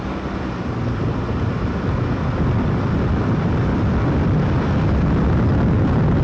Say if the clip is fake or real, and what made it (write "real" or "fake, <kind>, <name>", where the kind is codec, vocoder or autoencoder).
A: real